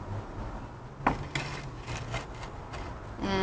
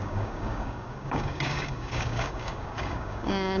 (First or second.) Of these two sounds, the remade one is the second